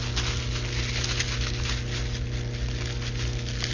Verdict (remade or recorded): recorded